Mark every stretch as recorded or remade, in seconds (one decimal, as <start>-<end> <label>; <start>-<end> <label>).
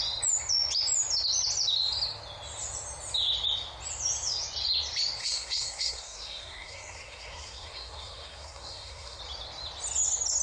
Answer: 0.0-5.2 recorded; 5.2-9.2 remade; 9.2-10.4 recorded